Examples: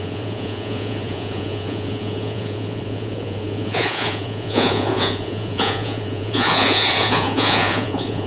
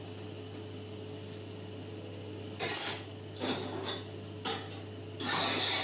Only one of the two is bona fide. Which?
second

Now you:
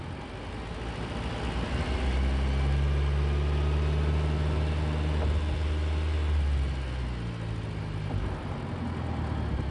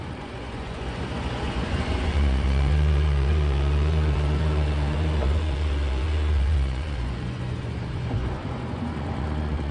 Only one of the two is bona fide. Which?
first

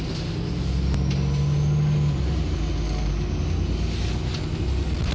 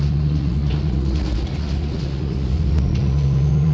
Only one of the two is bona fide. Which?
first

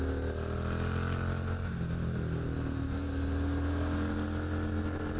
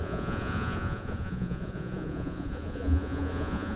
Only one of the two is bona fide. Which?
first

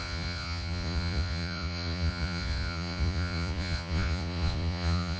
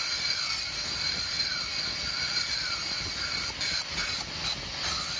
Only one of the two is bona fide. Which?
second